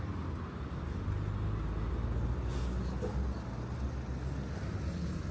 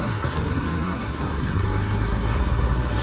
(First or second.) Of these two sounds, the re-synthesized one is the second